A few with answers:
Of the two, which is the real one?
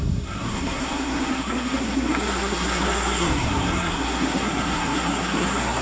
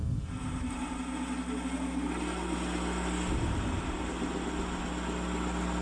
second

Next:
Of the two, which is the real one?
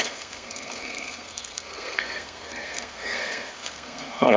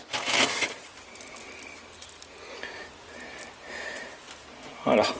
second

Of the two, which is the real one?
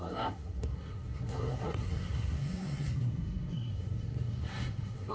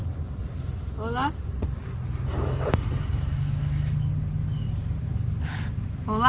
second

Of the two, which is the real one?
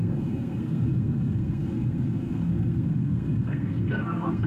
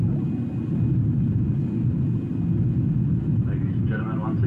second